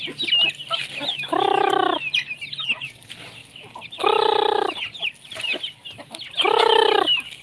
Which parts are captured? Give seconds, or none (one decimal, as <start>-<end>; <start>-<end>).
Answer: 0.0-1.1; 1.7-7.4